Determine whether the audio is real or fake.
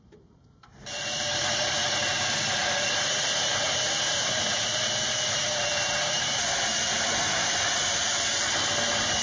fake